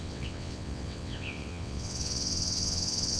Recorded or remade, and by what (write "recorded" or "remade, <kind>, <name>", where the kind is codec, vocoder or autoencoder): remade, vocoder, WaveNeXt